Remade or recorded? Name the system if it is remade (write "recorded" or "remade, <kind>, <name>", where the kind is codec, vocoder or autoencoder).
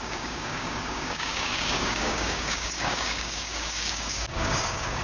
remade, codec, DAC